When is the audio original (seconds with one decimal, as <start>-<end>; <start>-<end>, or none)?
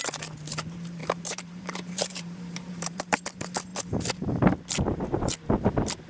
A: 0.0-1.0; 3.0-6.1